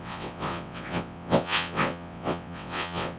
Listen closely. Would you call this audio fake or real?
fake